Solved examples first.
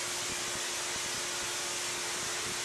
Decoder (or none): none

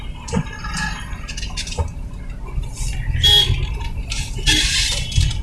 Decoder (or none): none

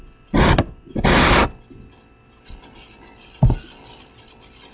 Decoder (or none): none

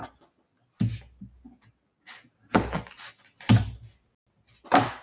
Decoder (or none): none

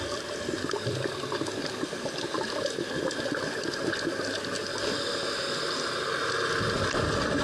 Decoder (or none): none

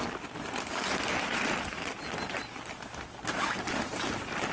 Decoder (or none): none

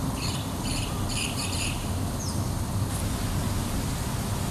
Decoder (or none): none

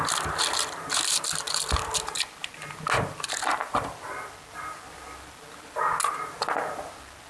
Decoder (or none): none